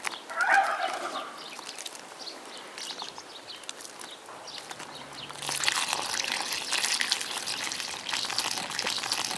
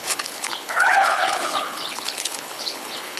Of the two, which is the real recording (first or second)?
first